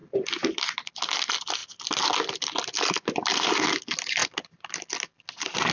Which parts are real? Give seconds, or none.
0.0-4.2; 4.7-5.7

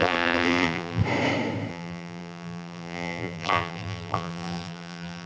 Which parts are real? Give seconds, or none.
1.0-1.7

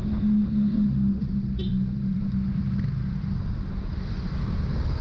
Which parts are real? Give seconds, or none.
0.0-5.0